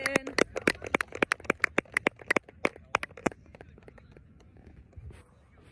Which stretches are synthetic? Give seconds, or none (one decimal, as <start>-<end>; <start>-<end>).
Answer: 3.2-4.9